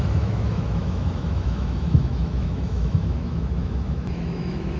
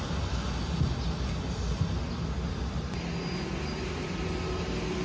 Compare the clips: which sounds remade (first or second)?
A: first